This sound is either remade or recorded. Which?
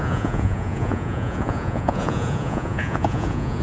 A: remade